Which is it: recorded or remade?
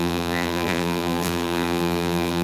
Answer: remade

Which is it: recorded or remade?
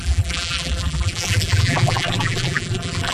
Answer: remade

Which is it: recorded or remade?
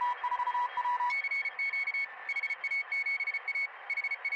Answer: recorded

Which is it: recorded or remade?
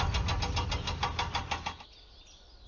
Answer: recorded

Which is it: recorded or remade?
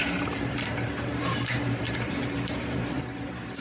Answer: remade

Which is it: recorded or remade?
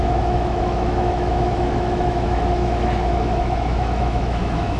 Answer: remade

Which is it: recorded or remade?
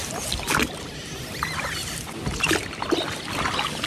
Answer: recorded